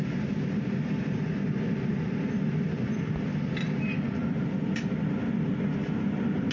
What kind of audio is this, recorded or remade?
recorded